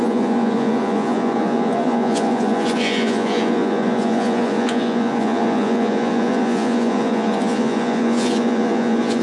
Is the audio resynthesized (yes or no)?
yes